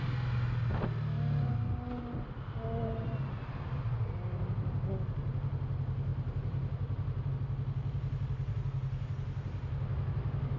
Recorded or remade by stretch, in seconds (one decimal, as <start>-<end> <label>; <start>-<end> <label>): 0.0-10.6 recorded